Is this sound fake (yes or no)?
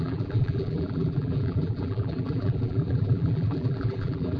yes